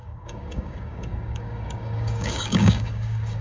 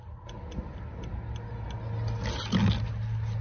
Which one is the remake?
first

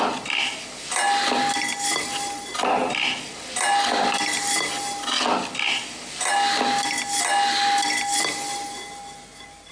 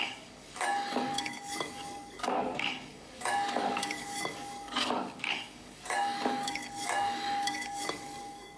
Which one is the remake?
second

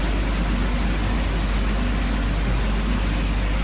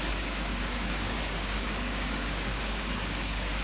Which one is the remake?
second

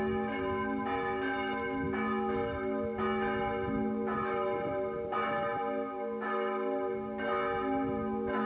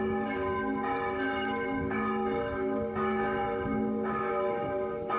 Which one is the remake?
second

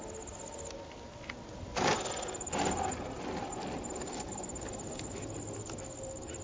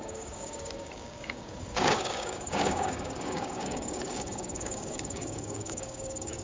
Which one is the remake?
second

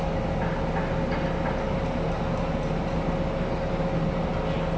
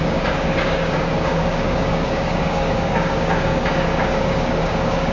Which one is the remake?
second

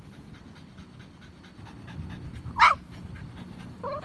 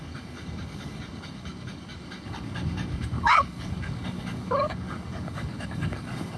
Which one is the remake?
second